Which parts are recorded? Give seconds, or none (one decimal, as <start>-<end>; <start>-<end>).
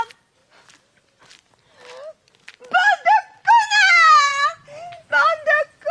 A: 0.4-3.9